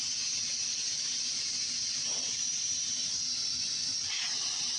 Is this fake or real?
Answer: fake